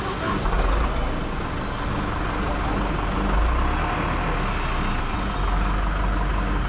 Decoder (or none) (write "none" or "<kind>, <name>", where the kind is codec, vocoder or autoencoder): none